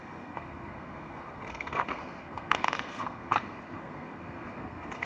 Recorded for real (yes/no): no